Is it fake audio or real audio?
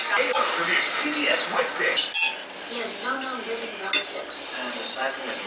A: real